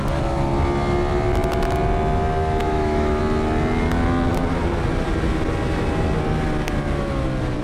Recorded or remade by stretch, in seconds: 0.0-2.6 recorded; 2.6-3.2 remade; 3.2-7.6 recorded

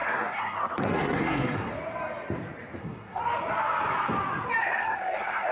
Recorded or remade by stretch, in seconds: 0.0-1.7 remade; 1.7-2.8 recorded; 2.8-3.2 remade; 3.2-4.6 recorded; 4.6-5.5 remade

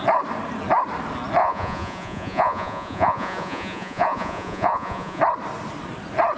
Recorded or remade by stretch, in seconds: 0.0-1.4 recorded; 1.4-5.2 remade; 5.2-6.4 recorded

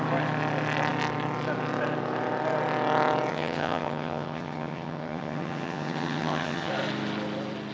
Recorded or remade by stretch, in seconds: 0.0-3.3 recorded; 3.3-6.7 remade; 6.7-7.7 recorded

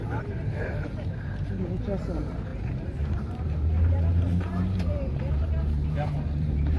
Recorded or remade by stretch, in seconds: 0.0-2.5 recorded; 2.5-6.8 remade

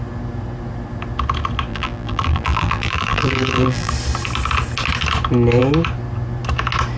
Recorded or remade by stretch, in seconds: 0.0-1.7 recorded; 1.7-3.9 remade; 3.9-7.0 recorded

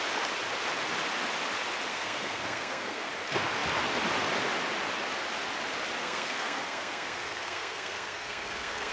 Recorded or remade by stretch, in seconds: 0.0-1.9 recorded; 1.9-3.1 remade; 3.1-6.0 recorded; 6.0-8.9 remade

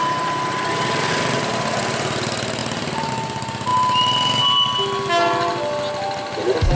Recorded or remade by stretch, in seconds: 0.0-2.6 recorded; 2.6-3.1 remade; 3.1-6.7 recorded